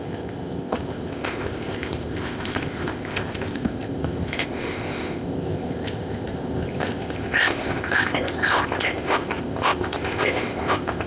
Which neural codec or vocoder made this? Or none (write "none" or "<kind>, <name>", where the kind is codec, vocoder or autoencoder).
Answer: codec, ZipCodec